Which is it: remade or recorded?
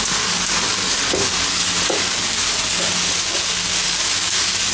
remade